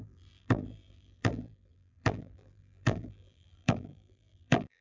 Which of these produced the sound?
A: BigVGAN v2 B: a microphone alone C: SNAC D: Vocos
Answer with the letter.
A